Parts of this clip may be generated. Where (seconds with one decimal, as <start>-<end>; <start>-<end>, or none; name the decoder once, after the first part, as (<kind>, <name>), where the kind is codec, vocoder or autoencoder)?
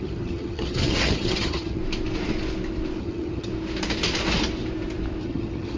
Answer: 0.0-1.8 (vocoder, HiFi-GAN); 3.0-3.5; 5.2-5.8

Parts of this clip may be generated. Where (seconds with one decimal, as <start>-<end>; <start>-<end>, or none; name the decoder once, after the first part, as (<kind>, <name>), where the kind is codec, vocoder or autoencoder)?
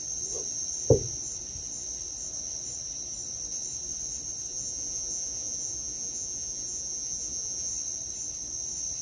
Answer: 4.5-7.7 (vocoder, Vocos)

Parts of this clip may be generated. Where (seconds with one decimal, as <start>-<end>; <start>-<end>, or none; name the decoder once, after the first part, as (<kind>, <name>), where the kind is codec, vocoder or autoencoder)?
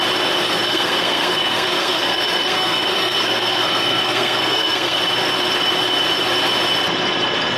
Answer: 0.4-5.0 (codec, SNAC)